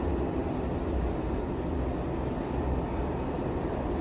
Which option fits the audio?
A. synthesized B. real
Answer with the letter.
B